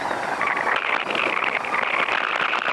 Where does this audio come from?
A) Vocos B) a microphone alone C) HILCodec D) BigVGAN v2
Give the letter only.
B